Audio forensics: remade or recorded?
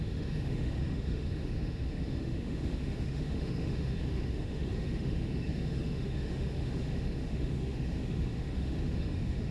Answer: remade